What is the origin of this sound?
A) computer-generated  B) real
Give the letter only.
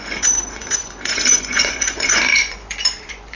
A